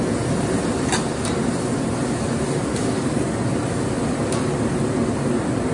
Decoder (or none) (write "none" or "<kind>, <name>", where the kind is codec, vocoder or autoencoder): none